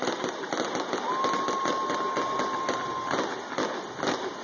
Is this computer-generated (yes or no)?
no